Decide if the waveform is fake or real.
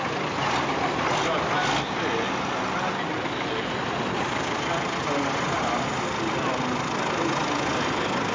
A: real